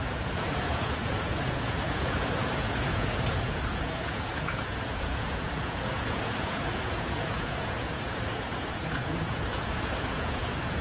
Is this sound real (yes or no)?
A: no